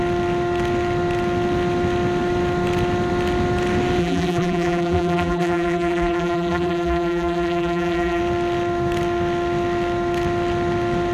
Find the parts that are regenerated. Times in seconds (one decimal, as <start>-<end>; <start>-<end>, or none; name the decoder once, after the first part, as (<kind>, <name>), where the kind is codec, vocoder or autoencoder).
4.0-8.2 (vocoder, BigVGAN v2)